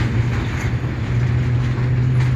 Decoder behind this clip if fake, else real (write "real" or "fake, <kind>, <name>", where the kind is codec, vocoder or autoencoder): real